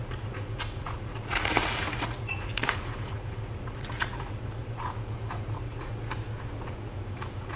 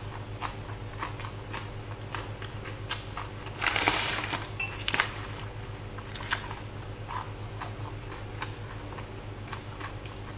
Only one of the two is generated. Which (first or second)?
first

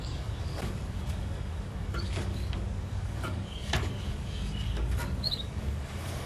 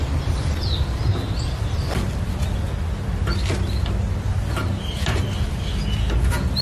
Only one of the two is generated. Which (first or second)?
first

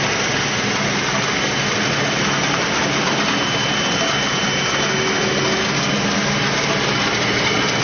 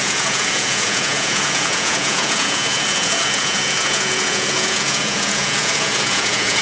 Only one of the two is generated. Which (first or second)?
second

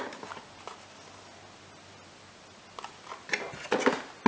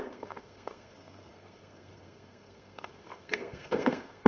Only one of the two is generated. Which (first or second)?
second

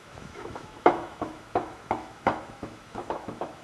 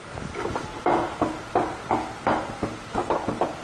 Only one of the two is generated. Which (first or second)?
first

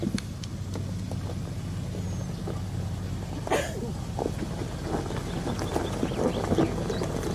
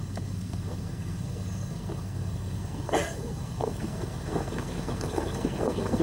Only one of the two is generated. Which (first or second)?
second